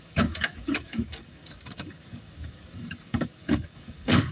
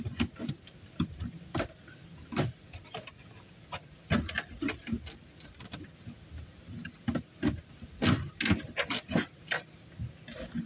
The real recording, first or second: second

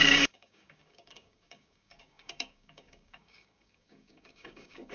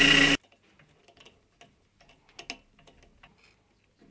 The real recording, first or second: second